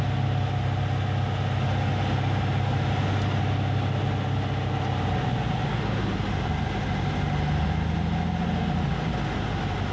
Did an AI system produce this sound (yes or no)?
no